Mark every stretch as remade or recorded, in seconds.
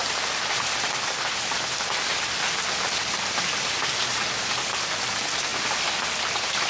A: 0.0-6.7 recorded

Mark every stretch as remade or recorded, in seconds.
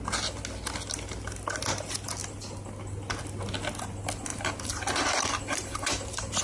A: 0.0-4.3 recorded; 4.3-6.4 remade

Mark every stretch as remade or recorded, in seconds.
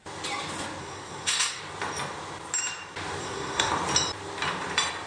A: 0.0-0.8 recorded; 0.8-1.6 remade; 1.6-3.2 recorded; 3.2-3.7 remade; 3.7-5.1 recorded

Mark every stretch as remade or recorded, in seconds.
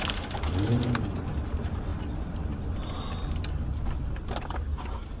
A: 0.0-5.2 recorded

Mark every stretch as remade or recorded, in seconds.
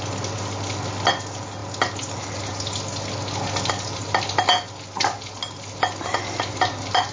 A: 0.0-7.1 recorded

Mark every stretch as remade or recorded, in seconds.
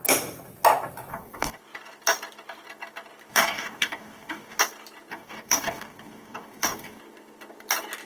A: 0.0-1.1 recorded; 1.1-1.6 remade; 1.6-3.3 recorded; 3.3-4.6 remade; 4.6-5.1 recorded; 5.1-7.0 remade; 7.0-8.1 recorded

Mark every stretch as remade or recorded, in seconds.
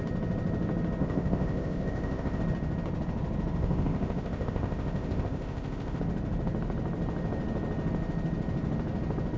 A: 0.0-1.0 recorded; 1.0-2.4 remade; 2.4-3.6 recorded; 3.6-6.0 remade; 6.0-9.4 recorded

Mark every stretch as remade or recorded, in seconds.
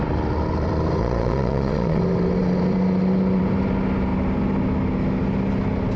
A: 0.0-1.0 recorded; 1.0-2.0 remade; 2.0-6.0 recorded